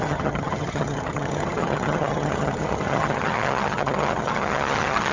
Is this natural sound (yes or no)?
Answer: no